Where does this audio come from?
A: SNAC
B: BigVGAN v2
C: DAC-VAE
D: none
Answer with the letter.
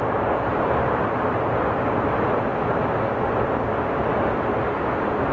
D